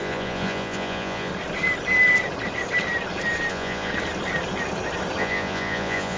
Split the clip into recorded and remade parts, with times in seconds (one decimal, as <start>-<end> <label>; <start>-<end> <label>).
0.0-1.3 remade; 1.3-3.5 recorded; 3.5-3.9 remade; 3.9-5.2 recorded; 5.2-6.2 remade